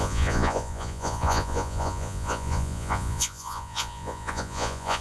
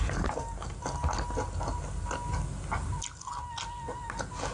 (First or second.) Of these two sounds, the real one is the second